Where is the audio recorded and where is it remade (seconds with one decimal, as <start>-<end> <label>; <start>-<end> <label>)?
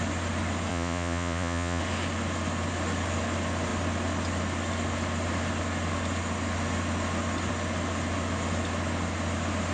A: 0.0-0.7 recorded; 0.7-1.8 remade; 1.8-9.7 recorded